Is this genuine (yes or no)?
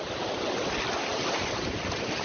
yes